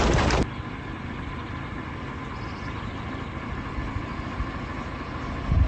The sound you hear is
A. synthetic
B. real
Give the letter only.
B